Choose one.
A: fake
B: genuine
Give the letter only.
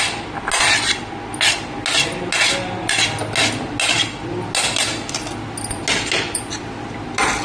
B